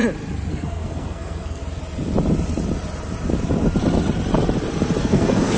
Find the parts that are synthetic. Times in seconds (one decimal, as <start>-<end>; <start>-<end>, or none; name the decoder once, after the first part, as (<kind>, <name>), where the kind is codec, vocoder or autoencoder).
0.5-1.6 (codec, SNAC); 5.0-5.6